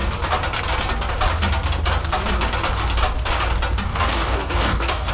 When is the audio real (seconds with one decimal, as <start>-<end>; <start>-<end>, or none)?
0.0-3.9